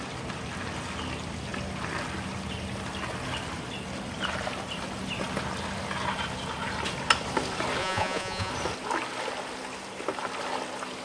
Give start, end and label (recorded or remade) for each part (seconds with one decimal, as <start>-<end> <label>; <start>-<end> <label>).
0.0-7.8 recorded; 7.8-8.5 remade; 8.5-11.0 recorded